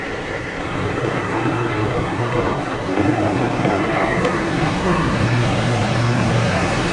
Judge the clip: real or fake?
fake